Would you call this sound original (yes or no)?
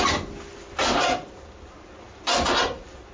yes